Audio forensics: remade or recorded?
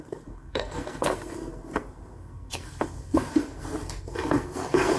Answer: remade